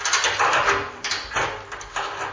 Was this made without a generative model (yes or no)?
yes